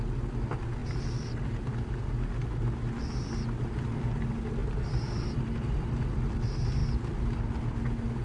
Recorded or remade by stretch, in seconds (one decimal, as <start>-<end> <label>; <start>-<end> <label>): 0.0-4.6 recorded; 4.6-5.9 remade; 5.9-6.8 recorded; 6.8-7.5 remade; 7.5-8.2 recorded